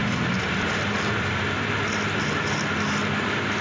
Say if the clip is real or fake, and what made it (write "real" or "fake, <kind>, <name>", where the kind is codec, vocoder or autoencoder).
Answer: real